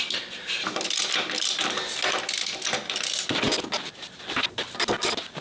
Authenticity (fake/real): real